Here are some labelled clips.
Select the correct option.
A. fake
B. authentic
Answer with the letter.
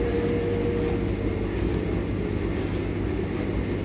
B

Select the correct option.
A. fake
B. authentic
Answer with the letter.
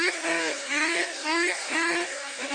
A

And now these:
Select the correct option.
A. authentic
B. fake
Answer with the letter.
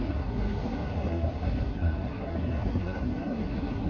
B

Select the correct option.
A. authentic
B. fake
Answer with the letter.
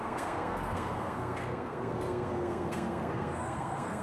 B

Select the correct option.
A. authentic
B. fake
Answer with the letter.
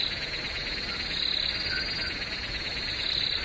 A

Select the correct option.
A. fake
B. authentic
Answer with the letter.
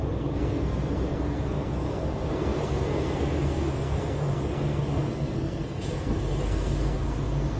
A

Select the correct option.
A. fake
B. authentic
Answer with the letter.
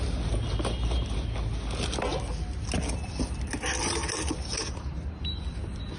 B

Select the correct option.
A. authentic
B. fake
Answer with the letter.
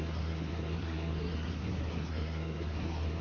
B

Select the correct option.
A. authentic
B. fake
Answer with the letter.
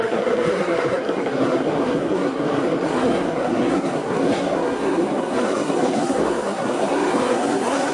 B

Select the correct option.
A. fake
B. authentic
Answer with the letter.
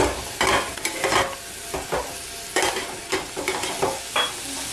B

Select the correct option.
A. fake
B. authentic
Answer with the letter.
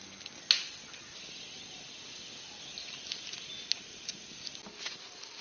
B